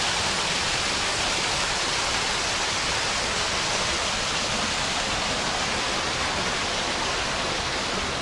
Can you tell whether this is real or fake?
real